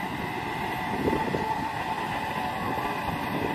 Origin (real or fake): real